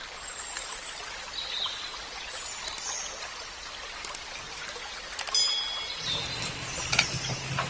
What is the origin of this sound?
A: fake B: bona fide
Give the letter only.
B